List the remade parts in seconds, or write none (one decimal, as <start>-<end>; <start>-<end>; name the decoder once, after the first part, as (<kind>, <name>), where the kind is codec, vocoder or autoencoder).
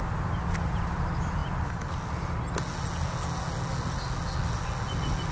none